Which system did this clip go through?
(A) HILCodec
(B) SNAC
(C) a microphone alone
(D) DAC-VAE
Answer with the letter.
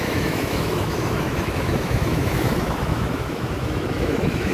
D